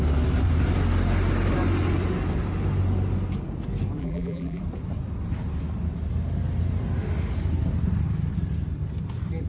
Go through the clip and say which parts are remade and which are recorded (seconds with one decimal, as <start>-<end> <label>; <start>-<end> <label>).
0.0-4.0 recorded; 4.0-4.6 remade; 4.6-9.5 recorded